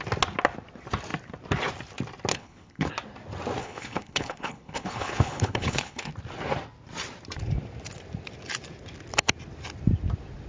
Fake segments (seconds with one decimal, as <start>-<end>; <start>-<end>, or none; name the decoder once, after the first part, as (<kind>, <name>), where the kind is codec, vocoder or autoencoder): 2.3-2.9 (codec, HILCodec); 3.6-6.1